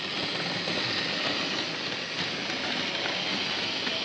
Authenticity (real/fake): real